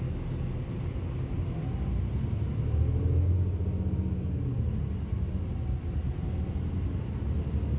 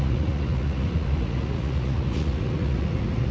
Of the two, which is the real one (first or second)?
first